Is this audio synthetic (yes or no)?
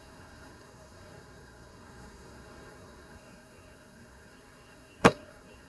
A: yes